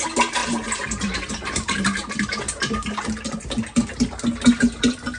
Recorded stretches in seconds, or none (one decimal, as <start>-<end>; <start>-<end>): 0.0-0.4; 2.1-5.2